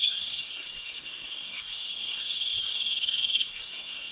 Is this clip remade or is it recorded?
remade